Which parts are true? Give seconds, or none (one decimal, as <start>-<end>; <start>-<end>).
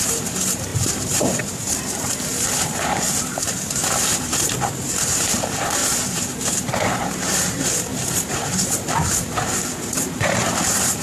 none